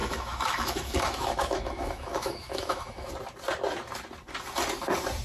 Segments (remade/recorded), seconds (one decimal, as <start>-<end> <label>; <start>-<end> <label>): 0.0-3.1 remade; 3.1-5.2 recorded